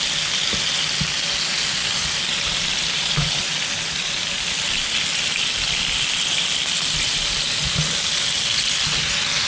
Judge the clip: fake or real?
real